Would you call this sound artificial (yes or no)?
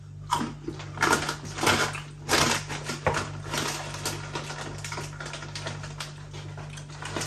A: no